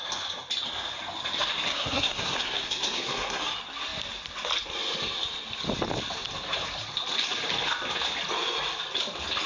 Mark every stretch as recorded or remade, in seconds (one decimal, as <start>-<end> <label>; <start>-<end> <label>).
0.0-1.7 recorded; 1.7-3.4 remade; 3.4-9.5 recorded